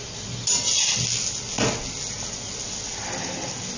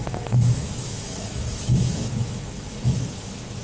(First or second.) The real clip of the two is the first